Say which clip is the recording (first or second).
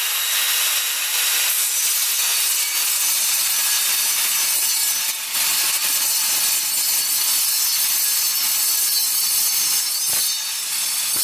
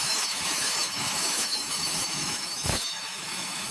first